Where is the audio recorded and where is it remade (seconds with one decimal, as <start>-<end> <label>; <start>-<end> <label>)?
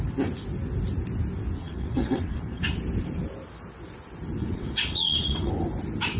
0.0-1.6 recorded; 1.6-2.6 remade; 2.6-4.4 recorded; 4.4-5.5 remade; 5.5-6.2 recorded